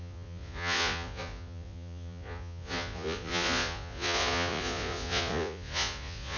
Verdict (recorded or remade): remade